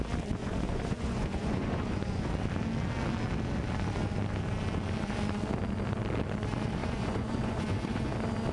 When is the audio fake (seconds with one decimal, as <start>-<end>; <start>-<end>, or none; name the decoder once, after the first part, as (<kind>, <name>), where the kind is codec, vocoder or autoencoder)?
0.4-2.3 (vocoder, Vocos); 6.8-8.1